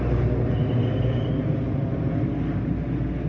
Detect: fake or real real